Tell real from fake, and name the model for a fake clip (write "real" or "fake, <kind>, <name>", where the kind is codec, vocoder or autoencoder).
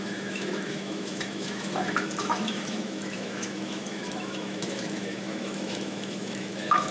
fake, autoencoder, DAC-VAE